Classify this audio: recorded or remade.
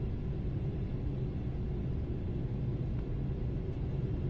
recorded